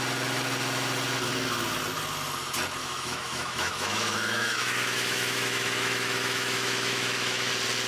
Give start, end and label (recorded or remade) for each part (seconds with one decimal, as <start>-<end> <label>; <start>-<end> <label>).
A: 0.0-2.8 recorded; 2.8-7.5 remade; 7.5-7.9 recorded